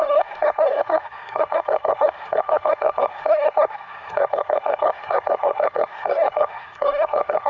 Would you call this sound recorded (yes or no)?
no